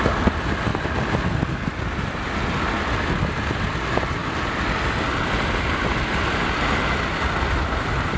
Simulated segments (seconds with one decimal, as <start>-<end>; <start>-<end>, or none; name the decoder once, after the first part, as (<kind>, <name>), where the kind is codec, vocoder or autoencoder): none